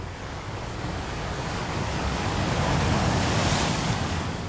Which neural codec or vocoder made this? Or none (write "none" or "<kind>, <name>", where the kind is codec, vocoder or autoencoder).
codec, DAC